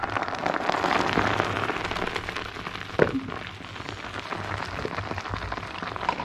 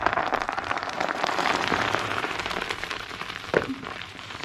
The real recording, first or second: first